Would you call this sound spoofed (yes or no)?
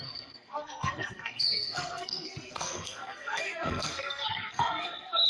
yes